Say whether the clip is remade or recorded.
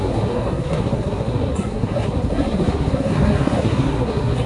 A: remade